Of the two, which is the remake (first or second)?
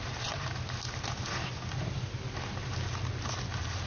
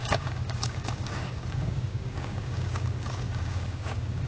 second